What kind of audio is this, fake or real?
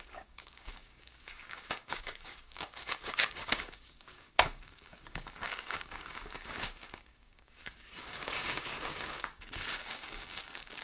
fake